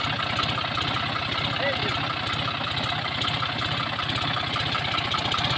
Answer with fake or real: real